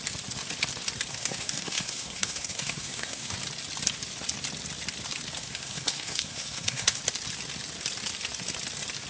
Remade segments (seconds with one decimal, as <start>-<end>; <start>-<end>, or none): 1.1-3.4; 5.4-7.0